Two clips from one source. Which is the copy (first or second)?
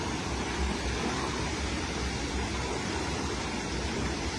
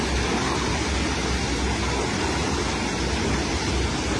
first